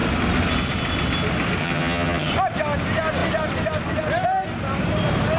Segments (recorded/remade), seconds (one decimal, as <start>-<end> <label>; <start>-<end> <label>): 0.0-1.6 recorded; 1.6-2.3 remade; 2.3-5.4 recorded